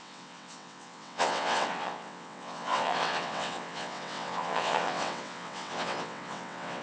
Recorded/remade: remade